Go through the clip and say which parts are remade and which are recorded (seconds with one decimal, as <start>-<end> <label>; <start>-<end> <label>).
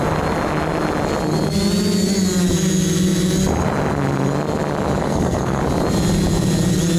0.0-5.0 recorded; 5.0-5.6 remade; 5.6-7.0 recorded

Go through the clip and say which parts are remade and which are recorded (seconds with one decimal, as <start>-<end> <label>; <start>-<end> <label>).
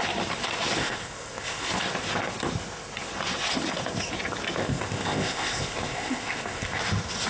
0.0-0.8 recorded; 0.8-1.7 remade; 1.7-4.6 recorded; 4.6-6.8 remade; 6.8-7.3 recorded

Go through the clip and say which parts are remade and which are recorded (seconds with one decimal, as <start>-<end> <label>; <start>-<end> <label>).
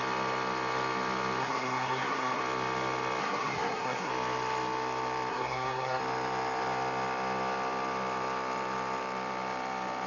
0.0-1.4 recorded; 1.4-2.4 remade; 2.4-3.2 recorded; 3.2-4.1 remade; 4.1-5.3 recorded; 5.3-6.0 remade; 6.0-10.1 recorded